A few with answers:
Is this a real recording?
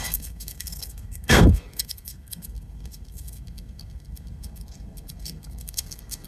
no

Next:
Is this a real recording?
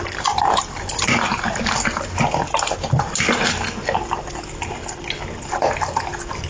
yes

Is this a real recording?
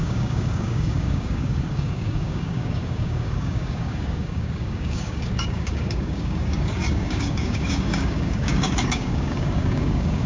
no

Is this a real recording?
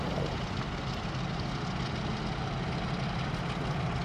yes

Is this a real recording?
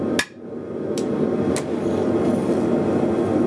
yes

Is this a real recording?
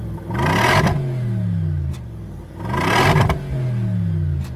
yes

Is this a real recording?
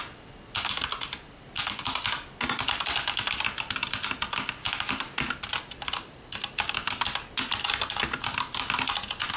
yes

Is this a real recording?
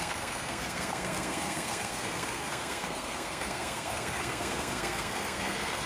no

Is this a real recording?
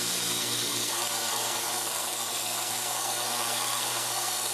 no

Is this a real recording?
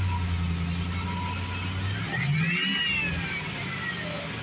yes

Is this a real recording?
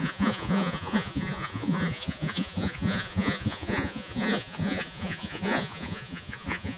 no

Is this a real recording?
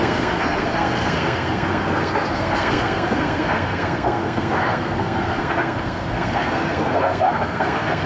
no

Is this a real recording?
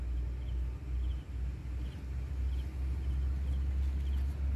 yes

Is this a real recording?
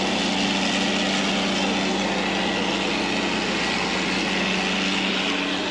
yes